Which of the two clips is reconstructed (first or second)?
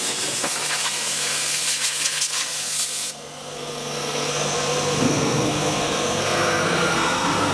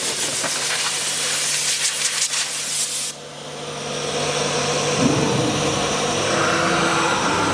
first